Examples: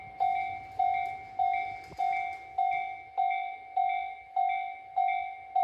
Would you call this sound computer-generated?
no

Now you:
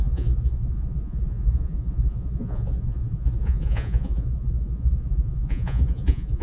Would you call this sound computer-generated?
yes